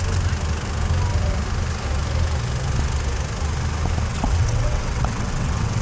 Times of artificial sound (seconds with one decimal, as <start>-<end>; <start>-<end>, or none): 4.1-5.8